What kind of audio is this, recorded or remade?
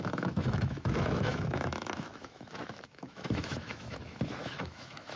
remade